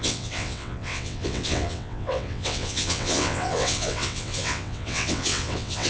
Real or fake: fake